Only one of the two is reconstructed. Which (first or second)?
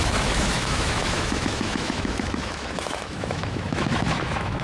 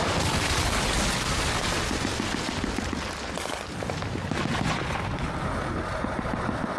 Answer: first